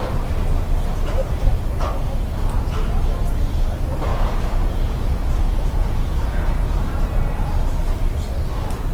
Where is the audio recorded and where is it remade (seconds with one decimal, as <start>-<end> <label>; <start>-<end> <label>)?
0.0-4.1 recorded; 4.1-6.8 remade; 6.8-8.9 recorded